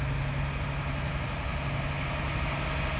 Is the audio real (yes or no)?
yes